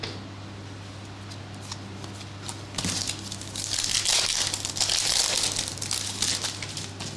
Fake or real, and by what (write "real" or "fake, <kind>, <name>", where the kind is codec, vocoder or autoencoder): real